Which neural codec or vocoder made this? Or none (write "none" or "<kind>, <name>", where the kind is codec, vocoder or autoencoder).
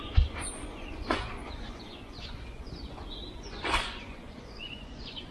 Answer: vocoder, Vocos